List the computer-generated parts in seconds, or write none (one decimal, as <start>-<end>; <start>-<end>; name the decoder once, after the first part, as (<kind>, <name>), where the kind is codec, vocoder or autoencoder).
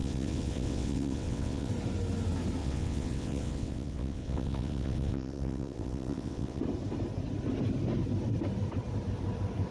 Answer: 0.0-1.7 (vocoder, WaveNeXt); 2.6-6.6